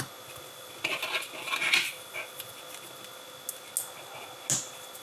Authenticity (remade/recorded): recorded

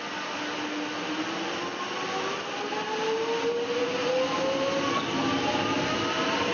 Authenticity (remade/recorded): recorded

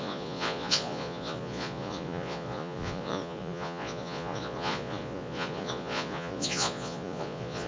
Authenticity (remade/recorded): remade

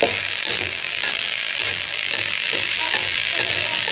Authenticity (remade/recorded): remade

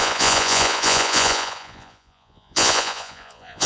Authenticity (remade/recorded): remade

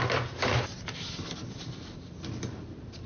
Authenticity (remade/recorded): recorded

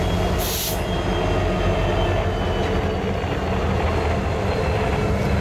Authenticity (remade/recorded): recorded